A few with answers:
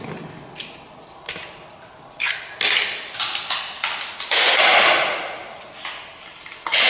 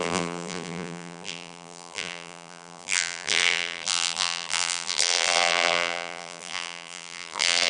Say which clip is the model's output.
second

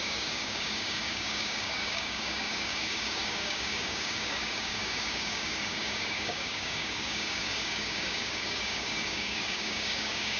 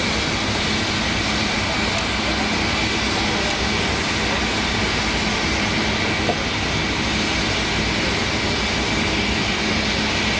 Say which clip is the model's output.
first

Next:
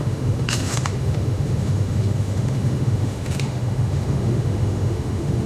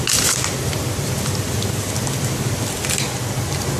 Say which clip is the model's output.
first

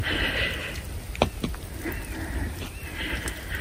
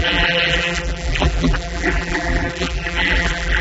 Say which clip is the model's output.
second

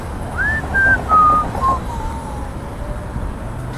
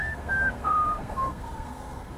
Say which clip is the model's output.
second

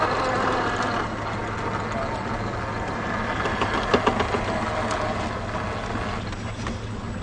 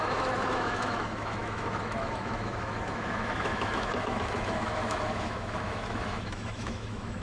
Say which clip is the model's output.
second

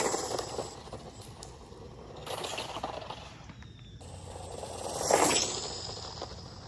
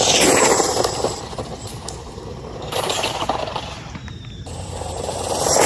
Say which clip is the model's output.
second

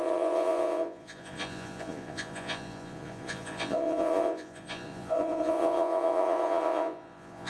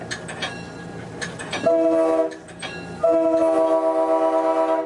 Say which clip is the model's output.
first